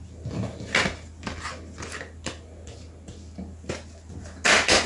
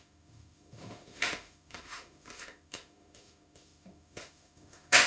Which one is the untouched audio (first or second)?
first